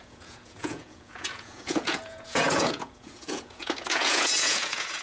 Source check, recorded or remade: remade